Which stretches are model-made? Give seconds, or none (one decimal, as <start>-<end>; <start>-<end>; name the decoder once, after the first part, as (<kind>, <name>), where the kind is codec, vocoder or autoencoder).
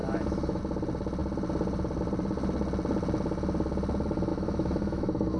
0.0-0.6 (autoencoder, DAC-VAE); 4.3-5.4